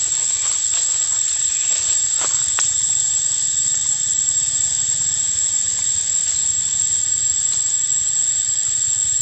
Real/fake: real